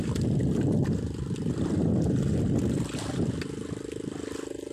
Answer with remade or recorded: recorded